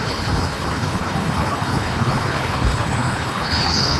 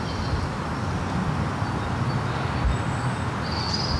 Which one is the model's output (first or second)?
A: first